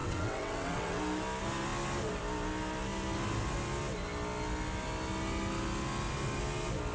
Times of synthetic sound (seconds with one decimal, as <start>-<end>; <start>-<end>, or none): 0.0-1.0